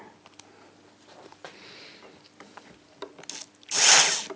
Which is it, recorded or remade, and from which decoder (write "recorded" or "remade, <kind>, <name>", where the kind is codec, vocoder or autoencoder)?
recorded